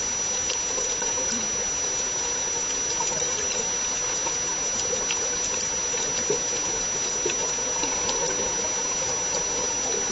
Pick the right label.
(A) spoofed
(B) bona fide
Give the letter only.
B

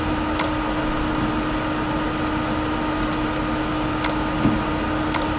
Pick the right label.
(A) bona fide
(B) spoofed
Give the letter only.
A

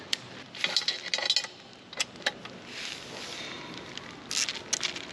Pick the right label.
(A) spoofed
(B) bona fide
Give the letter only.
B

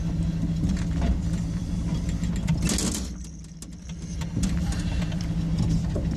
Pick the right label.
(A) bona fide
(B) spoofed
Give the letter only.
A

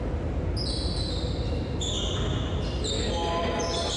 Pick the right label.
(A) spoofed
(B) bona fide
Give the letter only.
B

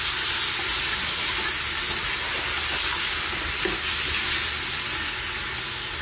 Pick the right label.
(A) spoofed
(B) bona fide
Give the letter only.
B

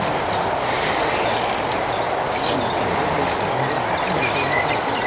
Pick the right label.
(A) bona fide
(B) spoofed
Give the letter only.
A